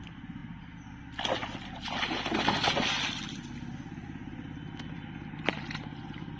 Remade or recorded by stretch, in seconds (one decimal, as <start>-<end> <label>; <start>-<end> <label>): 0.0-6.4 recorded